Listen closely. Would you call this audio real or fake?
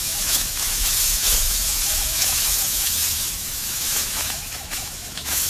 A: fake